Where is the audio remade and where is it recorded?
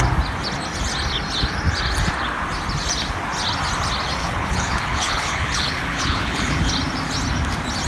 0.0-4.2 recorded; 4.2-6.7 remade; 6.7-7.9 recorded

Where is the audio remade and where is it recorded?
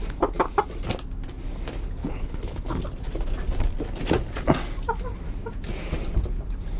0.0-2.0 recorded; 2.0-2.8 remade; 2.8-6.8 recorded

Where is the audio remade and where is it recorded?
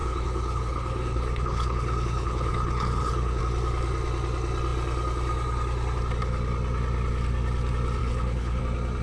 0.0-3.4 remade; 3.4-8.0 recorded; 8.0-8.6 remade; 8.6-9.0 recorded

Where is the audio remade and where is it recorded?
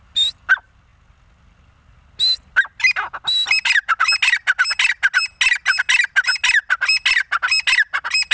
0.0-8.3 recorded